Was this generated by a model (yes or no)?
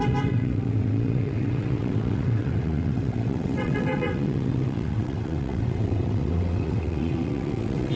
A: yes